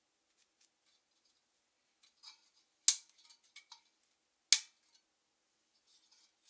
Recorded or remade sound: recorded